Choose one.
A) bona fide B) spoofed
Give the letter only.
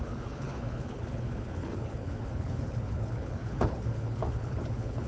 B